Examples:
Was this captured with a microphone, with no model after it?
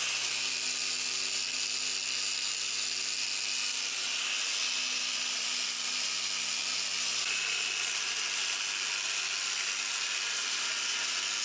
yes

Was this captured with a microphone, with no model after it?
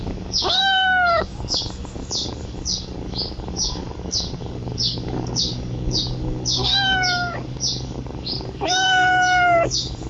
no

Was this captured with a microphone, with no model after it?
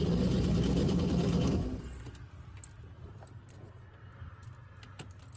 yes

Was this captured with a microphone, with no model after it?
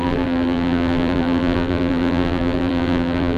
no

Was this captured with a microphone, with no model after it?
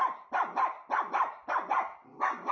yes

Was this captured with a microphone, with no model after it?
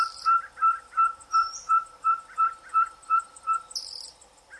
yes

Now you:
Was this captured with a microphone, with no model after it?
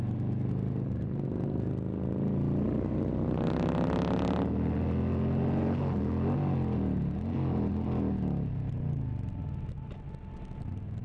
yes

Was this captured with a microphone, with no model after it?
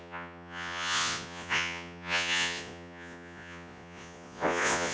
no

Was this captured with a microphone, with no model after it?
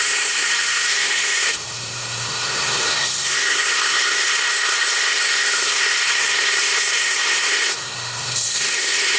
no